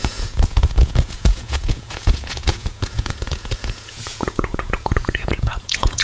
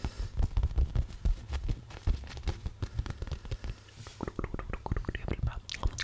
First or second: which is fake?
first